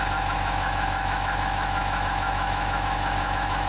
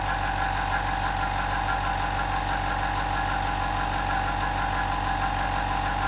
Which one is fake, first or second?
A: first